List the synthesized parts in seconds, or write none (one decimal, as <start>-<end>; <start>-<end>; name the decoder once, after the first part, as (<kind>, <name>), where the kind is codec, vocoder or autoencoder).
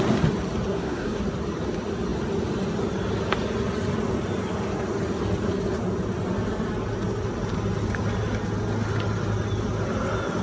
0.7-1.2 (codec, SNAC)